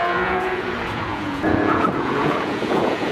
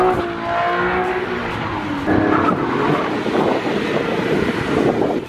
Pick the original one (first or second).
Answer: second